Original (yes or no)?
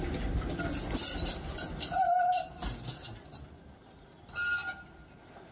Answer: yes